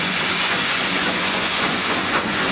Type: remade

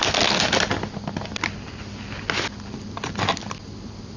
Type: recorded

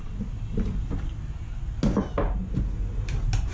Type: recorded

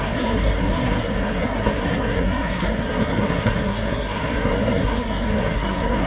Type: remade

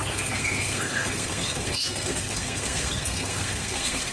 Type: remade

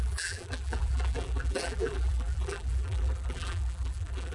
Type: remade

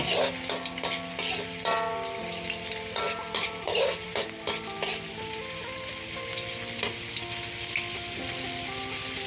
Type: recorded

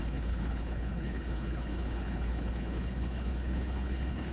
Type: remade